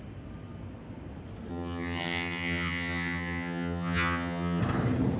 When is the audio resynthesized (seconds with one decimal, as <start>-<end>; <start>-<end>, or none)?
1.5-4.6